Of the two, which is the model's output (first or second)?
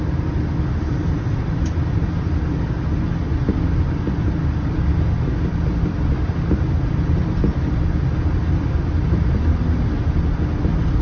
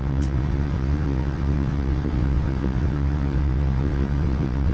second